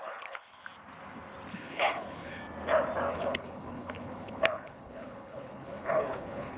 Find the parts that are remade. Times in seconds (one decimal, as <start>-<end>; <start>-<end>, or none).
0.0-0.6; 1.5-2.4; 3.1-6.6